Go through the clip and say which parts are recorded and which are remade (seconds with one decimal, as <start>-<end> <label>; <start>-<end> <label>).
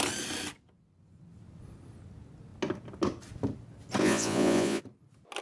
0.0-4.0 recorded; 4.0-4.8 remade; 4.8-5.4 recorded